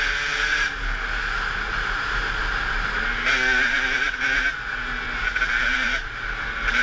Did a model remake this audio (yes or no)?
no